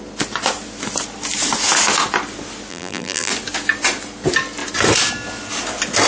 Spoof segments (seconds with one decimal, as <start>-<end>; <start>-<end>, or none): 2.7-3.3